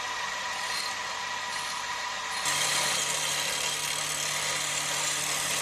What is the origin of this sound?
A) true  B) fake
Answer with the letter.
A